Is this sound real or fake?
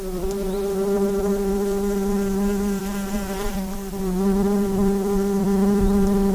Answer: fake